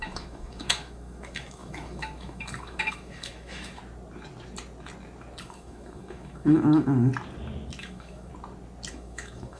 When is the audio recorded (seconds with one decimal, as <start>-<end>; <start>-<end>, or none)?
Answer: 3.8-5.4; 7.1-7.8; 8.3-8.9